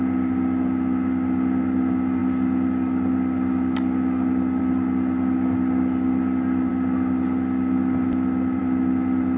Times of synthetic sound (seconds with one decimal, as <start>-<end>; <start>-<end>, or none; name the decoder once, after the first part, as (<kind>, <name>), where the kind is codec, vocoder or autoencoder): none